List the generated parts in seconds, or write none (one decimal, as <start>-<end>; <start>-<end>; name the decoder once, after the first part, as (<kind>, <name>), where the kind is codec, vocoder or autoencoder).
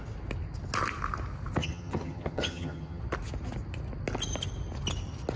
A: 1.6-3.0 (vocoder, HiFi-GAN)